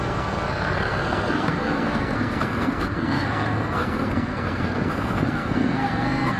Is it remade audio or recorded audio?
remade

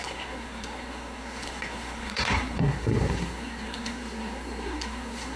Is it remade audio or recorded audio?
remade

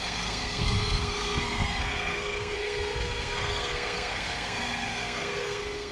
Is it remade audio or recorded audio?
remade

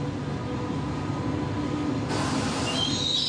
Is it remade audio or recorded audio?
recorded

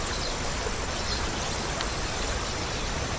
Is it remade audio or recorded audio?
recorded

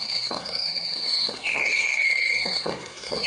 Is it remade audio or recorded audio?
remade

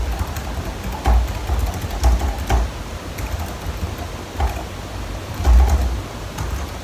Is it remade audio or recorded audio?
recorded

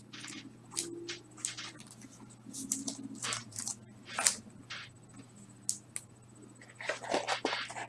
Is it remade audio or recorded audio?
recorded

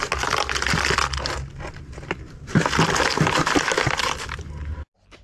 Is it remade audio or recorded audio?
recorded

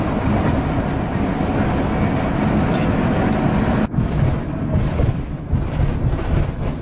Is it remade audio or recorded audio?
recorded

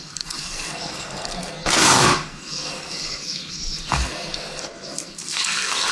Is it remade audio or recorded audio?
remade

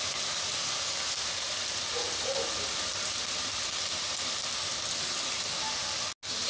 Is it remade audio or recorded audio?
recorded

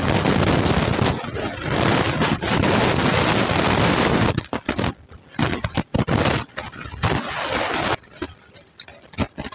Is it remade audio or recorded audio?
recorded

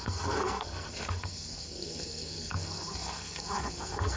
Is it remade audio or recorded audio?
remade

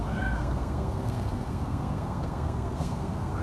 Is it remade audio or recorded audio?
remade